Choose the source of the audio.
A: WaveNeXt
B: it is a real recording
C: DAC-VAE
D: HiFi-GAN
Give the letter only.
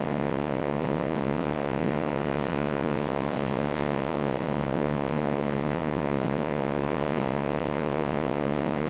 A